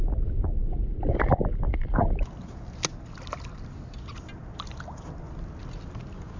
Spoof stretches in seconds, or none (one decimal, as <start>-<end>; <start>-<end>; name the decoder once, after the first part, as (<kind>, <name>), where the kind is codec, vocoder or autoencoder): none